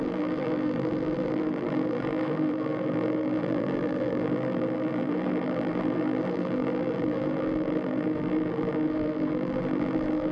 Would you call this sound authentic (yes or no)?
no